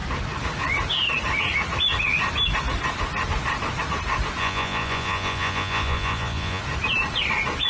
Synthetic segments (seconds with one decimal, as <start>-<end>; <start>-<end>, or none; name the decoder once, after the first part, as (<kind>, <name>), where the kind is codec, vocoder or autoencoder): 4.4-6.6 (vocoder, Vocos)